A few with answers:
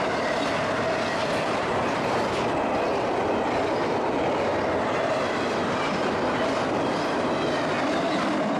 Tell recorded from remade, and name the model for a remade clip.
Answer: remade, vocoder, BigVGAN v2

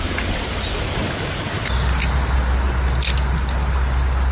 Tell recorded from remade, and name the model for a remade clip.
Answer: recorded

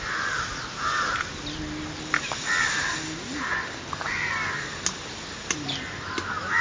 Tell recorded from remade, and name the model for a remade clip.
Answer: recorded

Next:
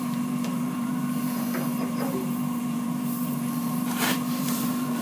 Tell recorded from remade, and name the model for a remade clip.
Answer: remade, vocoder, BigVGAN v2